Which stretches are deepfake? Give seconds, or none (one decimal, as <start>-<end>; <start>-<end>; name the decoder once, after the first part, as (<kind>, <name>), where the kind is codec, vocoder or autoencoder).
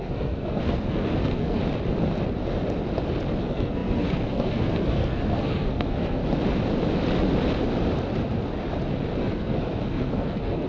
0.0-1.6 (codec, SNAC); 3.4-6.2; 9.2-10.7